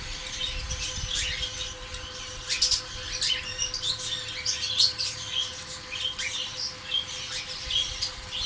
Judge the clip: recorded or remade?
recorded